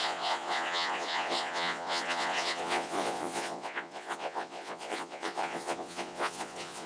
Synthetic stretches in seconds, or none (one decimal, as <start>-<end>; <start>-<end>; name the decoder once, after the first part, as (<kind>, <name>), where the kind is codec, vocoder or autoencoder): 0.0-6.9 (vocoder, Vocos)